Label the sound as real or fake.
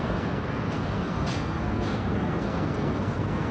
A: fake